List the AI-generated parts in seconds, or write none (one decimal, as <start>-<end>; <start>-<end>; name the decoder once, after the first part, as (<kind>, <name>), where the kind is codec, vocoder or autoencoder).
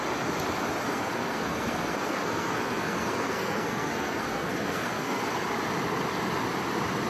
0.9-5.2 (codec, SNAC)